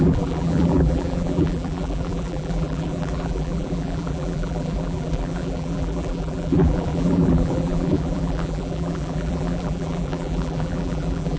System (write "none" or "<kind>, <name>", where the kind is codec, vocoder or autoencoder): vocoder, BigVGAN v2